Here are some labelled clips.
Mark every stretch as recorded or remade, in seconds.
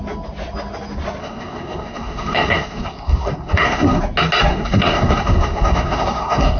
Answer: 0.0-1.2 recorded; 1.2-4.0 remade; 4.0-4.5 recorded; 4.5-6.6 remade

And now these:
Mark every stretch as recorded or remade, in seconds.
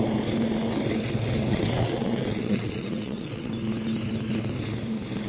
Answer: 0.0-1.5 recorded; 1.5-3.5 remade; 3.5-5.3 recorded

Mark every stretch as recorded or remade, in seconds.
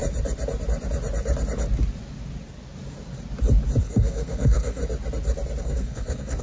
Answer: 0.0-3.8 recorded; 3.8-4.8 remade; 4.8-5.6 recorded; 5.6-6.4 remade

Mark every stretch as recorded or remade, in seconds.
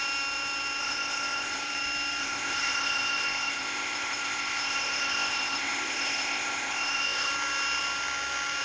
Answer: 0.0-0.8 recorded; 0.8-1.6 remade; 1.6-2.2 recorded; 2.2-7.3 remade; 7.3-8.6 recorded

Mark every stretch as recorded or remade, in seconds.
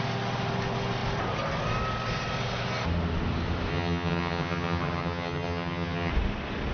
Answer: 0.0-3.7 recorded; 3.7-6.1 remade; 6.1-6.7 recorded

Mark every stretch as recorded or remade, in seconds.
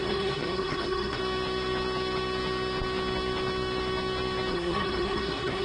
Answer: 0.0-1.2 remade; 1.2-4.5 recorded; 4.5-5.6 remade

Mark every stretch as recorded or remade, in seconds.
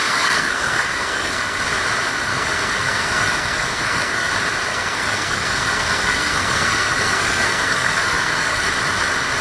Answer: 0.0-1.6 remade; 1.6-2.3 recorded; 2.3-4.3 remade; 4.3-4.7 recorded; 4.7-8.7 remade; 8.7-9.4 recorded